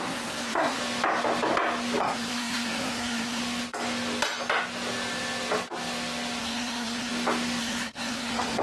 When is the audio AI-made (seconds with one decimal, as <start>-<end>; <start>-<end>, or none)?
0.0-0.8; 2.0-3.4; 6.4-7.1; 7.6-8.6